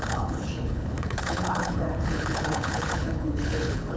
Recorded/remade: remade